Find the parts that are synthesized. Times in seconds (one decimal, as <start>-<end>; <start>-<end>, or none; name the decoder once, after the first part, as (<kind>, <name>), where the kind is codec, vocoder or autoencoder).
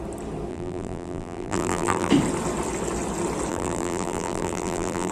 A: 0.5-2.1 (vocoder, BigVGAN v2); 3.5-5.1